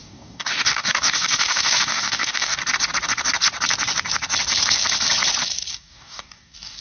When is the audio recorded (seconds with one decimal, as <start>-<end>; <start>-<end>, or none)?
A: 2.6-5.7